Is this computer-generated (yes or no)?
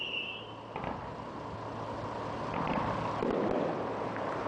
no